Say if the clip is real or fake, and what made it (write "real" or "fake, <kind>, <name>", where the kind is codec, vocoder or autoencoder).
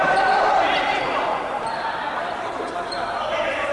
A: fake, vocoder, BigVGAN v2